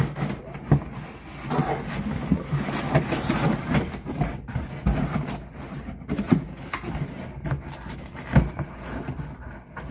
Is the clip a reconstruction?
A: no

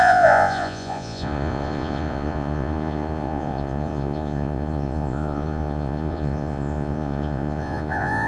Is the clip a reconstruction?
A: yes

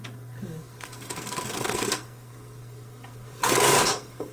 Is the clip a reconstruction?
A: yes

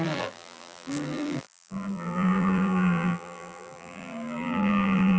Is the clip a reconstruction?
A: yes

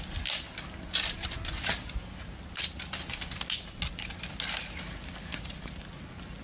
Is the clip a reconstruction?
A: no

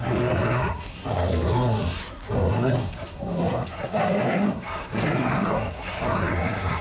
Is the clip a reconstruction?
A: yes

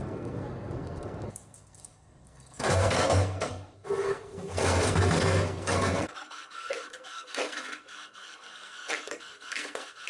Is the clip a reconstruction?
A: yes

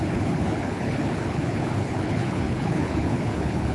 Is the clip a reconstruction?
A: yes